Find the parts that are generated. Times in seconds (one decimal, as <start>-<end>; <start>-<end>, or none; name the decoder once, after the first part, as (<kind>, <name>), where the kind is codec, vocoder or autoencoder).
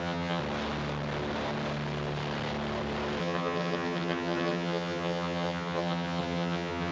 0.0-0.4 (vocoder, HiFi-GAN); 3.2-6.9